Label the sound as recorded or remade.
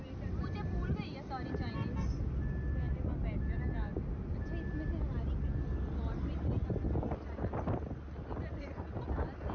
recorded